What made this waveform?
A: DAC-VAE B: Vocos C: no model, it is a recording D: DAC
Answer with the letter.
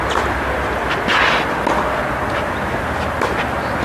C